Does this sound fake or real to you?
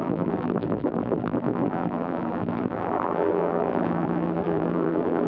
fake